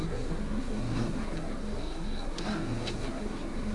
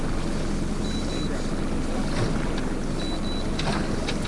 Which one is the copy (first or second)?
first